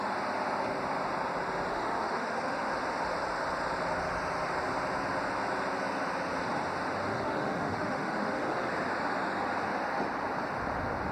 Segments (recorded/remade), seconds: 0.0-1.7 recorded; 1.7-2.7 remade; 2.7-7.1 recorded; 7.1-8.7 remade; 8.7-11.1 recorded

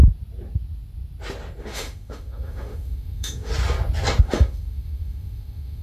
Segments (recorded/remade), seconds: 0.0-1.6 recorded; 1.6-3.5 remade; 3.5-4.2 recorded; 4.2-5.8 remade

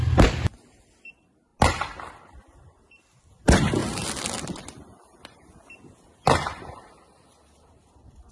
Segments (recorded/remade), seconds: 0.0-8.3 recorded